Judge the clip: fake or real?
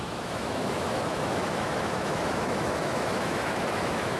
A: fake